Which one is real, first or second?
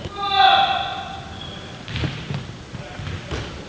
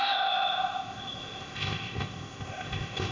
first